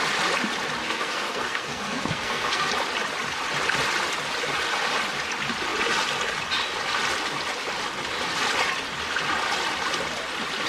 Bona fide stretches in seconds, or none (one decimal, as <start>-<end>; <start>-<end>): 0.0-0.8; 2.7-10.7